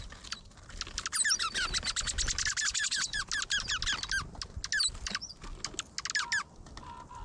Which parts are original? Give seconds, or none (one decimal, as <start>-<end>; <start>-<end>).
0.0-2.7; 3.3-7.2